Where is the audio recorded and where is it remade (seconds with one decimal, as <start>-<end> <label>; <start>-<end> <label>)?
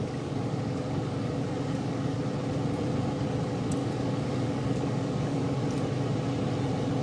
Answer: 0.0-2.2 remade; 2.2-3.8 recorded; 3.8-5.5 remade; 5.5-7.0 recorded